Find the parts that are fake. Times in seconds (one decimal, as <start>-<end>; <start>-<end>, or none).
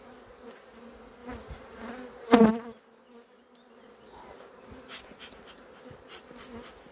none